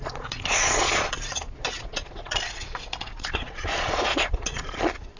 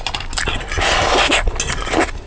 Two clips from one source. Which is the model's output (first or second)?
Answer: first